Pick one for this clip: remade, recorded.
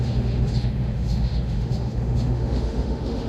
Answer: remade